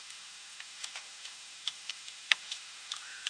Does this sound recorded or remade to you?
remade